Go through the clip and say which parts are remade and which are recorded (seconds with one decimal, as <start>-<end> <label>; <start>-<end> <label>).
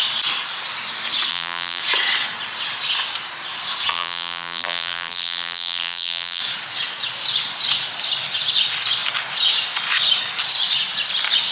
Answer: 0.0-1.3 recorded; 1.3-1.8 remade; 1.8-3.9 recorded; 3.9-6.4 remade; 6.4-11.5 recorded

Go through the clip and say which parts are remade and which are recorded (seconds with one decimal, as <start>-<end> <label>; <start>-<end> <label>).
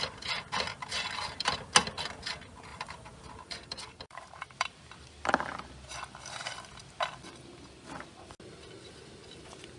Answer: 0.0-2.7 recorded; 2.7-5.7 remade; 5.7-9.8 recorded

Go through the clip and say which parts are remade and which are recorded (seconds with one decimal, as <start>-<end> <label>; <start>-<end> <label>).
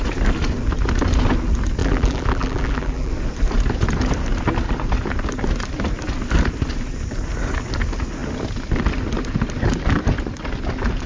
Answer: 0.0-1.8 recorded; 1.8-3.1 remade; 3.1-11.1 recorded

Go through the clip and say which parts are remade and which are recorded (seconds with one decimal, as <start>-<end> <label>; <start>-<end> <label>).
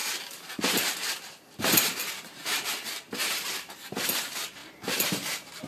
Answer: 0.0-1.6 recorded; 1.6-5.7 remade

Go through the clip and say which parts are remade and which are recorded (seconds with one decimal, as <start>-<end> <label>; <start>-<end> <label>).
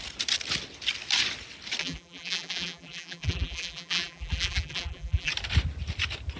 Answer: 0.0-1.8 recorded; 1.8-5.3 remade; 5.3-6.4 recorded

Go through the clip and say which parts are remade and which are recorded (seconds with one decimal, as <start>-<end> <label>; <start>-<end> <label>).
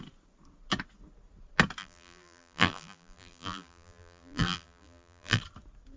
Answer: 0.0-1.8 recorded; 1.8-5.4 remade; 5.4-6.0 recorded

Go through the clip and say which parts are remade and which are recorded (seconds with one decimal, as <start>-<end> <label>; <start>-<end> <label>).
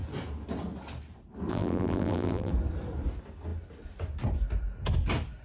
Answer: 0.0-1.5 recorded; 1.5-2.5 remade; 2.5-5.4 recorded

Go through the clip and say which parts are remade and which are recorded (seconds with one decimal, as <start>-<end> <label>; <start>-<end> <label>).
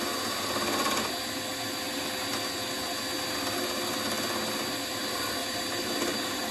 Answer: 0.0-5.4 recorded; 5.4-6.5 remade